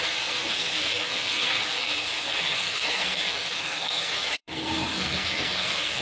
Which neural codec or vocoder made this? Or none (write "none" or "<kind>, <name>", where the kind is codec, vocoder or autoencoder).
codec, SNAC